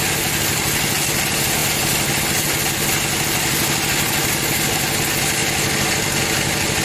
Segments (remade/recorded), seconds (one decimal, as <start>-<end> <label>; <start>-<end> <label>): 0.0-6.8 recorded